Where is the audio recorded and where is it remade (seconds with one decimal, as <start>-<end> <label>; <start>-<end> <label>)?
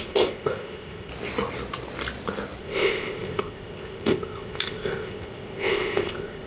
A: 0.0-1.1 remade; 1.1-2.6 recorded; 2.6-6.5 remade